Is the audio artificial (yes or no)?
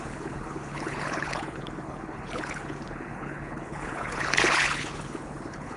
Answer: yes